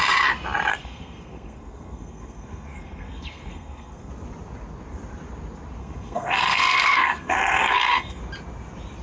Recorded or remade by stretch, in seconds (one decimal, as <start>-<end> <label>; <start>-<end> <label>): 0.0-0.7 recorded; 0.7-4.1 remade; 4.1-5.8 recorded; 5.8-8.2 remade; 8.2-9.0 recorded